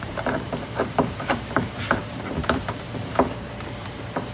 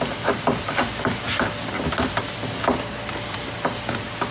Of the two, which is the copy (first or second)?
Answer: first